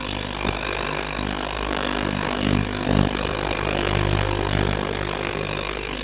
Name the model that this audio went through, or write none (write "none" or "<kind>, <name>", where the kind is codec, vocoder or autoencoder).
codec, SNAC